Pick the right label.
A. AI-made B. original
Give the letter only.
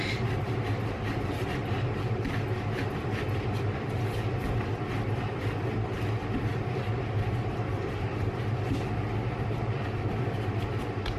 A